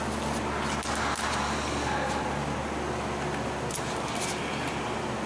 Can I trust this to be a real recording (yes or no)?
yes